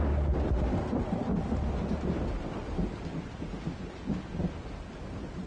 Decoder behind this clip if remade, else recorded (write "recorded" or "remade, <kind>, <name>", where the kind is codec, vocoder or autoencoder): recorded